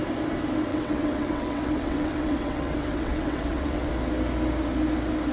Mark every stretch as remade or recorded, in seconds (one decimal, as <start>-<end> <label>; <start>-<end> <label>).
0.0-0.7 recorded; 0.7-3.9 remade; 3.9-5.3 recorded